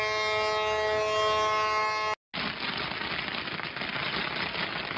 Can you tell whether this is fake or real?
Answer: real